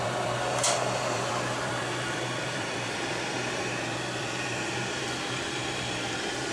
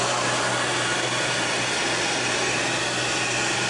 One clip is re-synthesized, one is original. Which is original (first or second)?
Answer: second